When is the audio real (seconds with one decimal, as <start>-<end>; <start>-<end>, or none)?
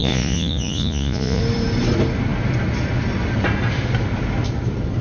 1.4-5.0